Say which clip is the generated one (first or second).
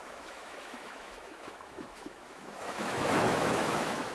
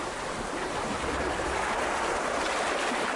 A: first